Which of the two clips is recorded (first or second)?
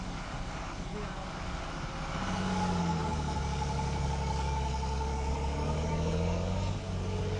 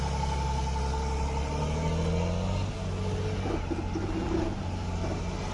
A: second